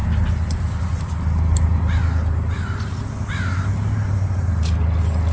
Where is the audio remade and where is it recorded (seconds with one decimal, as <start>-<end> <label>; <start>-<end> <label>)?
0.0-5.3 recorded